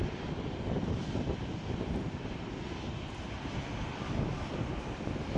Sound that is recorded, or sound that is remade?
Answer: recorded